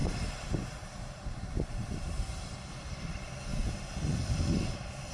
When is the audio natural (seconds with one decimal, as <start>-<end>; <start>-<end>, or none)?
3.1-5.1